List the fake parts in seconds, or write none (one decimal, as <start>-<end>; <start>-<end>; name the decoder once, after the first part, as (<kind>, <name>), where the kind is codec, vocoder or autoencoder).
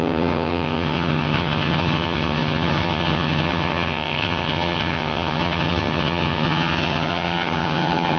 0.0-8.2 (vocoder, HiFi-GAN)